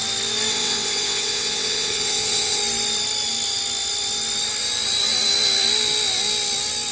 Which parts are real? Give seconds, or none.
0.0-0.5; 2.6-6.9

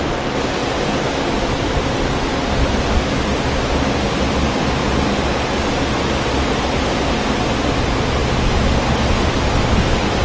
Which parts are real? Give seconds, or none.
0.0-10.2

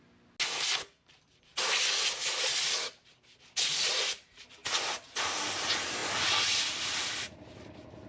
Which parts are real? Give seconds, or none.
0.0-8.1

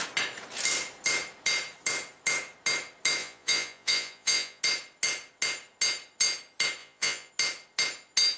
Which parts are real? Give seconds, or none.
0.0-3.2; 4.6-6.8; 7.3-8.4

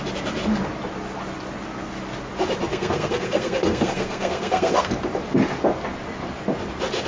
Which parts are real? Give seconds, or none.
0.0-2.7; 4.9-7.1